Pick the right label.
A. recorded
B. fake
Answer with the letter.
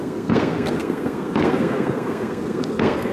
B